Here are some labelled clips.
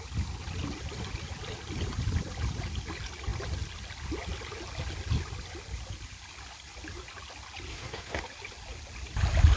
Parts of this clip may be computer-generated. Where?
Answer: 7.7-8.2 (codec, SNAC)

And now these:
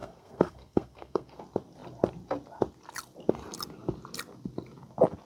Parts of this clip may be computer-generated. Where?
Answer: 0.0-1.4 (codec, SNAC)

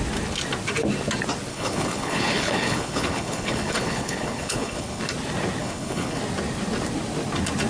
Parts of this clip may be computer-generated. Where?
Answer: 1.5-5.0 (codec, HILCodec); 5.6-6.2